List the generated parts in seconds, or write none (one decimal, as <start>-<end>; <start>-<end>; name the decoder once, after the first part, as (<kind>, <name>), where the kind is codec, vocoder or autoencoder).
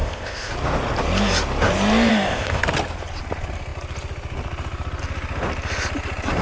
0.0-0.5 (codec, ZipCodec); 2.1-2.6